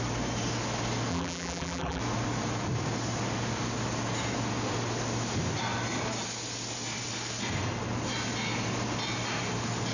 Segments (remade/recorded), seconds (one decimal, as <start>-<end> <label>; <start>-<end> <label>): 0.0-1.1 recorded; 1.1-2.0 remade; 2.0-9.9 recorded